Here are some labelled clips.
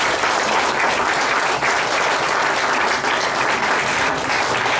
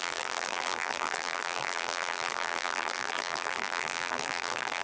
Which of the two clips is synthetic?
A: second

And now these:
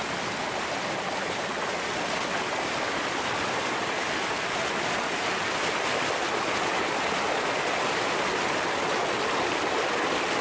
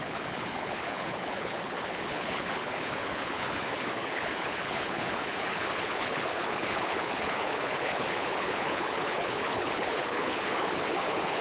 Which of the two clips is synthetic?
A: second